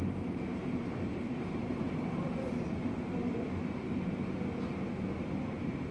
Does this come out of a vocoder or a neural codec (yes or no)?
yes